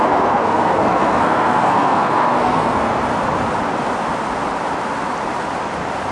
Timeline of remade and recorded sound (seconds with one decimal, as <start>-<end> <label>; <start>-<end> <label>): 0.0-2.9 remade; 2.9-6.1 recorded